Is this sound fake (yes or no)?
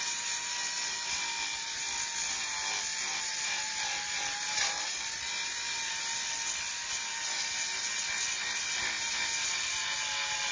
no